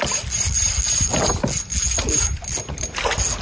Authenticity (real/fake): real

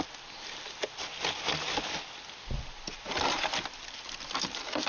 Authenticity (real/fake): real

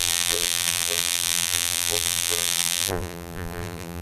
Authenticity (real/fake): fake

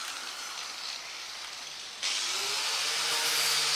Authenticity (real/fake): real